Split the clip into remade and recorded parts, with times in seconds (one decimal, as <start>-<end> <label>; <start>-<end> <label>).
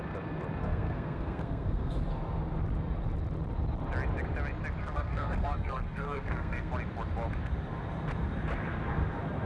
0.0-0.6 recorded; 0.6-1.9 remade; 1.9-4.8 recorded; 4.8-6.7 remade; 6.7-9.5 recorded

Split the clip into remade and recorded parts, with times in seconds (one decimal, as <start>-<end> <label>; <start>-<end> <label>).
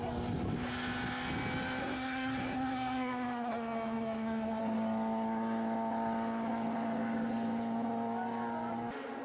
0.0-1.8 recorded; 1.8-4.6 remade; 4.6-9.2 recorded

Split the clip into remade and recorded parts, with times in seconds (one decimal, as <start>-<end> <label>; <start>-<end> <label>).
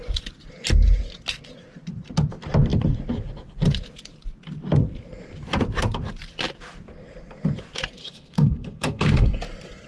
0.0-8.0 recorded; 8.0-9.4 remade; 9.4-9.9 recorded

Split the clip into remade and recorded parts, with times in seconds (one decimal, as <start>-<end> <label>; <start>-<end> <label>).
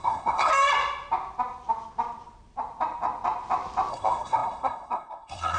0.0-0.5 remade; 0.5-3.9 recorded; 3.9-5.6 remade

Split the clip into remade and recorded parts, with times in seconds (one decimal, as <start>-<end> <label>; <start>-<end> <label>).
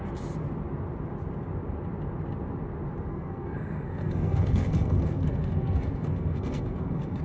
0.0-3.1 recorded; 3.1-7.2 remade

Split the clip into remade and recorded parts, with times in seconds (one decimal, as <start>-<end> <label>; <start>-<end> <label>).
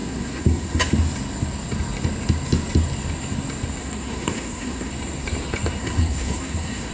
0.0-0.8 remade; 0.8-3.8 recorded; 3.8-4.9 remade; 4.9-5.8 recorded; 5.8-6.9 remade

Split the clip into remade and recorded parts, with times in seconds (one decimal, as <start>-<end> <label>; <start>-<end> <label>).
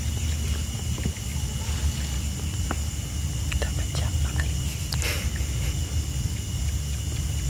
0.0-7.5 recorded